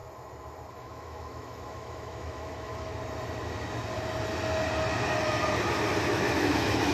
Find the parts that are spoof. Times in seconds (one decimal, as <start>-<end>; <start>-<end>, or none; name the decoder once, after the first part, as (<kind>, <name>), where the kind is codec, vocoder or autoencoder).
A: 0.7-2.9 (autoencoder, DAC-VAE); 6.1-6.9